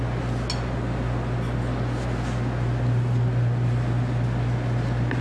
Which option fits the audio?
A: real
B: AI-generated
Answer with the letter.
A